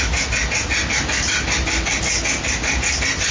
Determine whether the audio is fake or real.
real